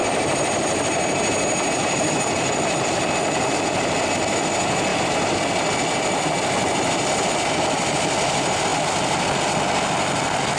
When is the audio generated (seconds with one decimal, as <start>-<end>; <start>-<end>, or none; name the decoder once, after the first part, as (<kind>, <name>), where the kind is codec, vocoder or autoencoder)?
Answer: 0.0-3.0 (vocoder, BigVGAN v2); 4.9-5.4